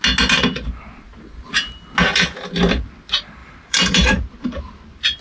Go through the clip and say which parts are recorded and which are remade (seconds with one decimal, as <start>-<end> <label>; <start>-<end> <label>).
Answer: 0.0-3.4 recorded; 3.4-4.6 remade; 4.6-5.2 recorded